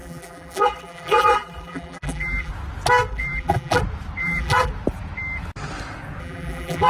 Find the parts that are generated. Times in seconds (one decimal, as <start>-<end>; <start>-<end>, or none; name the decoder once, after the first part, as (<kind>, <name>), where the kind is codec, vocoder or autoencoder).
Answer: 0.0-2.5 (vocoder, BigVGAN v2); 3.1-3.8; 4.2-4.7; 6.2-6.9